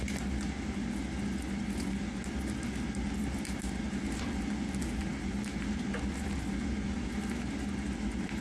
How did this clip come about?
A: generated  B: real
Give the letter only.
B